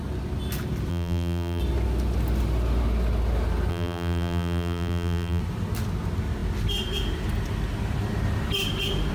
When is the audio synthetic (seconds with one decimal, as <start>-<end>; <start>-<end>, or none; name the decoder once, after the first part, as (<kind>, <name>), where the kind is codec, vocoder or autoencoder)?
0.9-1.6 (vocoder, BigVGAN v2); 3.7-5.4